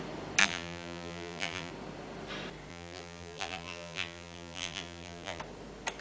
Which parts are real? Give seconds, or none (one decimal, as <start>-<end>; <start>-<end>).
0.0-0.4; 1.7-2.7; 5.4-6.0